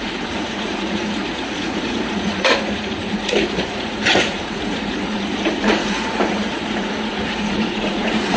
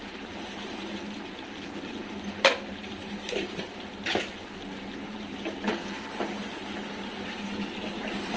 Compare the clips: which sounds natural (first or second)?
second